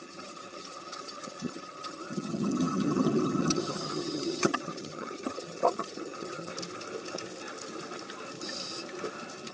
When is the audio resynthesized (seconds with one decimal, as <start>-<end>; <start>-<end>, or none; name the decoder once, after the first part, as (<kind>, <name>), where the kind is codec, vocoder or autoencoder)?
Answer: 0.0-6.5 (vocoder, HiFi-GAN)